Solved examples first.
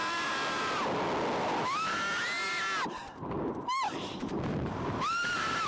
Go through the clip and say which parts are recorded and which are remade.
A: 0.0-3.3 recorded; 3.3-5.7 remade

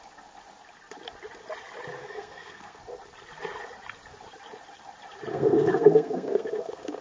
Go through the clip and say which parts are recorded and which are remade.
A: 0.0-2.0 recorded; 2.0-2.8 remade; 2.8-5.3 recorded; 5.3-7.0 remade